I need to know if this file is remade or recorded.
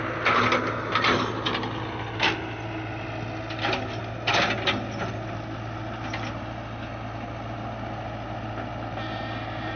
recorded